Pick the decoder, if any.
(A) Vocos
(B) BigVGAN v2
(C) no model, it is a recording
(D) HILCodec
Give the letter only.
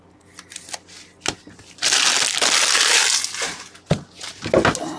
C